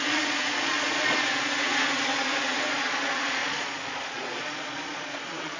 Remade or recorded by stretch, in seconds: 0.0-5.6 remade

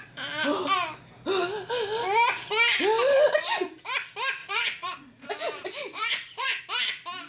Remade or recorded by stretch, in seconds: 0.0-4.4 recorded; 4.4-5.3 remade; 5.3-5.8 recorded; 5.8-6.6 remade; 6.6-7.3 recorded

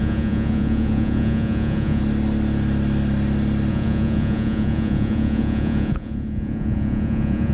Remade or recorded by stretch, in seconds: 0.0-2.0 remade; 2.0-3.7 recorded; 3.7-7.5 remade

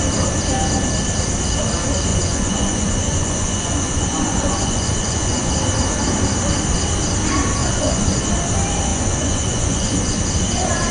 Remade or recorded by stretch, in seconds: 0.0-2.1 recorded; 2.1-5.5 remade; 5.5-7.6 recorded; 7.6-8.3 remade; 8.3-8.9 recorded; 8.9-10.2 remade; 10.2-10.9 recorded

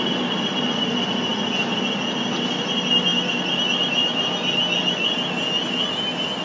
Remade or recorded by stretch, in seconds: 0.0-6.4 recorded

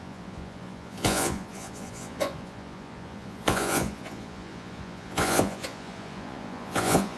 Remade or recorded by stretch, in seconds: 0.0-7.2 remade